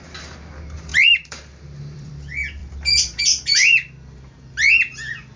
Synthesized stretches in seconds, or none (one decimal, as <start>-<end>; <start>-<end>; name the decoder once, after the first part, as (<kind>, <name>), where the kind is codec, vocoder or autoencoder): 0.9-2.1 (vocoder, BigVGAN v2)